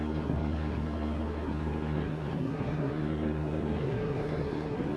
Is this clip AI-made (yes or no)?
yes